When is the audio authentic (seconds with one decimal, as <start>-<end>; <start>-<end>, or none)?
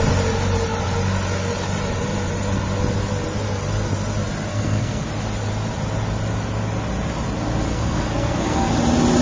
0.0-4.5; 5.1-7.7; 8.7-9.2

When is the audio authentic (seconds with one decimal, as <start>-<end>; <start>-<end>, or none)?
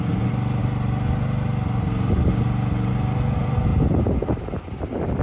0.0-5.2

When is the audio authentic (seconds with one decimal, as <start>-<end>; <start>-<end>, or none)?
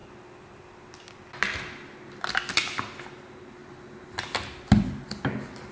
0.0-5.7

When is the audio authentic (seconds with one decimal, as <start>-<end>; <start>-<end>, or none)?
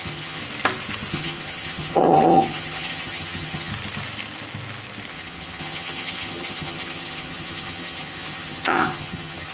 0.4-1.1; 3.7-5.1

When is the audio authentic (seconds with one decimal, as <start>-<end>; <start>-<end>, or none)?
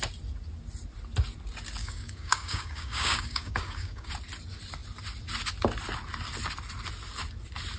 0.0-1.8; 4.1-7.8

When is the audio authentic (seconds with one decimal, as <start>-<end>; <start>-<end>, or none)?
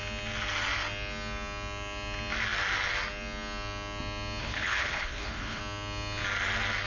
0.0-4.4; 5.6-6.9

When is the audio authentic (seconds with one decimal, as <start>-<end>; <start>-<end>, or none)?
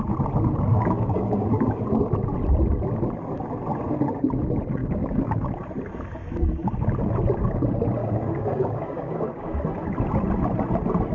0.0-0.7; 1.8-4.8; 5.7-8.0; 9.6-11.1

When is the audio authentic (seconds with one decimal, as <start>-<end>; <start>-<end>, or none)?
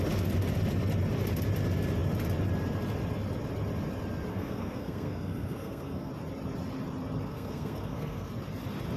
0.0-4.3; 6.1-7.3; 8.3-9.0